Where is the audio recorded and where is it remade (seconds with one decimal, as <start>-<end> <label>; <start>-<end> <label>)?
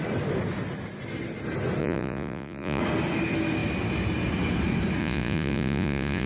0.0-1.8 recorded; 1.8-2.8 remade; 2.8-5.0 recorded; 5.0-6.3 remade